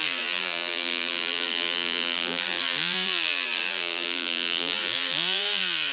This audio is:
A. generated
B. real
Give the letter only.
A